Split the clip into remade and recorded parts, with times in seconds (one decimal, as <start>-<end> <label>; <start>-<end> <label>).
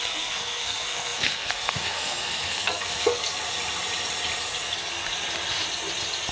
0.0-3.3 remade; 3.3-6.3 recorded